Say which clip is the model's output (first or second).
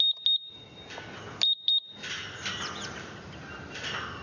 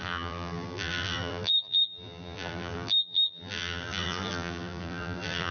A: second